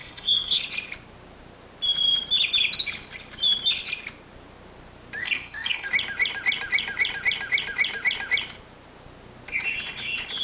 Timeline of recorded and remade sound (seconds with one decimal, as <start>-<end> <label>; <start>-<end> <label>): 0.0-0.6 remade; 0.6-5.2 recorded; 5.2-5.9 remade; 5.9-10.4 recorded